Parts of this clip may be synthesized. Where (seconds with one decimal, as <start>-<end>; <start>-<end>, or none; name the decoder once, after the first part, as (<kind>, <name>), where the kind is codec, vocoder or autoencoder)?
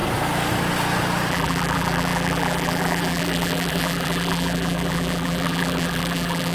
1.3-6.5 (vocoder, BigVGAN v2)